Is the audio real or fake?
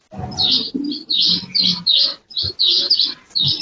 real